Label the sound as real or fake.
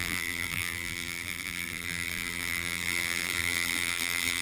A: fake